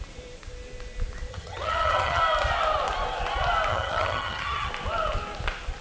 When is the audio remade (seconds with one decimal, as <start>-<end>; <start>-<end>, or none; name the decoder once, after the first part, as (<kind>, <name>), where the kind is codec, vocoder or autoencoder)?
1.3-2.2 (vocoder, HiFi-GAN); 3.7-4.7